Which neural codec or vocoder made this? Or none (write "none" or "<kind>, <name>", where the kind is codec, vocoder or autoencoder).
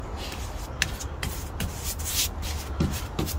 vocoder, BigVGAN v2